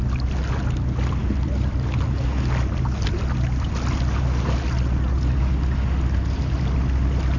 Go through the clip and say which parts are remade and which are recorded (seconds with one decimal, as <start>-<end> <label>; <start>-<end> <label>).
0.0-7.4 recorded